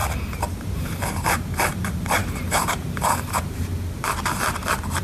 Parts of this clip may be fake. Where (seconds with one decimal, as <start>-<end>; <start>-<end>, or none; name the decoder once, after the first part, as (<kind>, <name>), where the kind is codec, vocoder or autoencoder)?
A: 0.7-3.7 (vocoder, BigVGAN v2)